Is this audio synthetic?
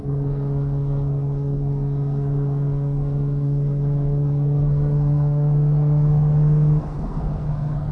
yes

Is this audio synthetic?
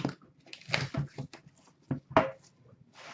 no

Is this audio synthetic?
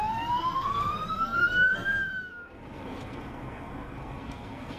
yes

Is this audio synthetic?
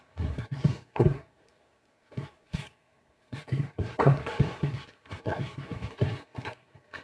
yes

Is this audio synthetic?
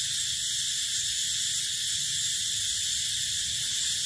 no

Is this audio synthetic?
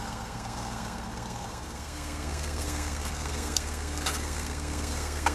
yes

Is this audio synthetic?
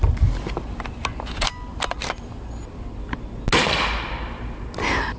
no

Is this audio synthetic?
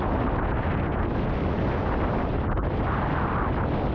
no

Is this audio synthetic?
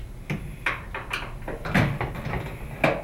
no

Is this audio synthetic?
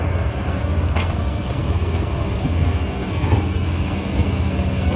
yes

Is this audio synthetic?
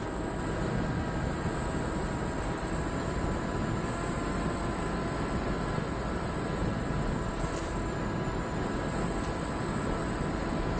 no